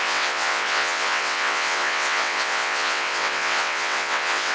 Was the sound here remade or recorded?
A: remade